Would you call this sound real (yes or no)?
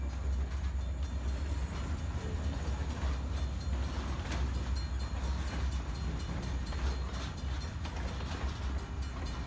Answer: yes